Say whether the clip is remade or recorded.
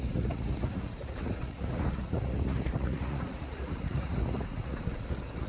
remade